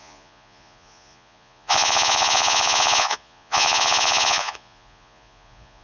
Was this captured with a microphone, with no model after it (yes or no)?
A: no